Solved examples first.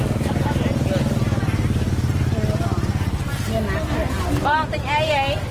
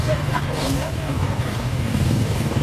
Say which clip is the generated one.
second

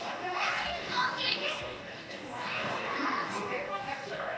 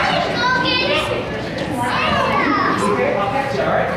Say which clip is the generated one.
first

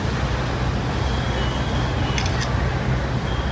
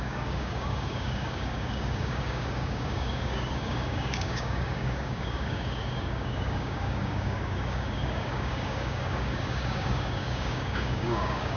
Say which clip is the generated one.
second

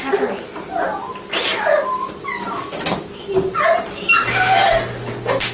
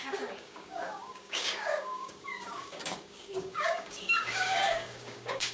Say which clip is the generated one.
second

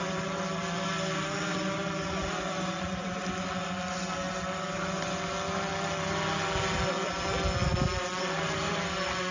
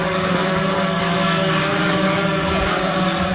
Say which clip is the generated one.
second